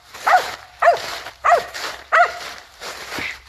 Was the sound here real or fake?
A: fake